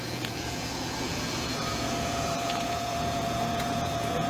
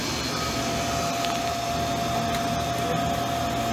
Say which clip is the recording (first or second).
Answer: second